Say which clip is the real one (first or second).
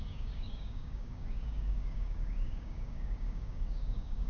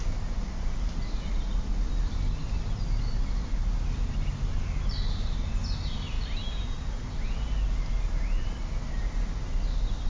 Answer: second